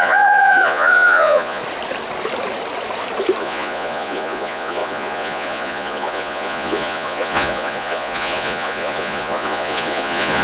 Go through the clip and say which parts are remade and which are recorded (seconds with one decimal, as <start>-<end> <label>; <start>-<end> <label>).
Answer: 0.0-1.6 remade; 1.6-3.4 recorded; 3.4-10.4 remade

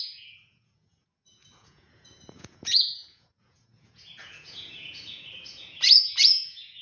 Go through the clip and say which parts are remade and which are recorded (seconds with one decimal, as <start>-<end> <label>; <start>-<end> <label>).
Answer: 0.0-6.8 remade